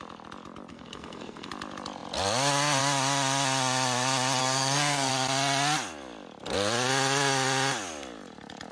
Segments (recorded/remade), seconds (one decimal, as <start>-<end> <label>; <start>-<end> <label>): 0.0-0.7 recorded; 0.7-1.5 remade; 1.5-4.4 recorded; 4.4-5.1 remade; 5.1-8.7 recorded